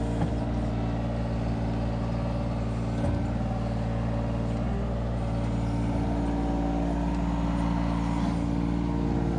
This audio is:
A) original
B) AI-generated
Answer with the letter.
A